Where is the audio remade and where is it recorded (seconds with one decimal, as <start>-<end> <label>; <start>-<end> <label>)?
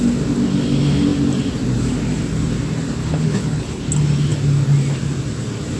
0.0-3.0 recorded; 3.0-3.8 remade; 3.8-5.8 recorded